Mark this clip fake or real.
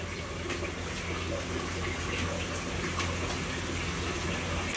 real